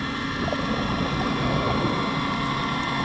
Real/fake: real